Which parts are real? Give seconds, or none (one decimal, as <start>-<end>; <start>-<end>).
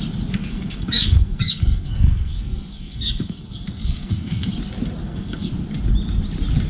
0.0-0.5; 4.5-5.0; 5.5-6.7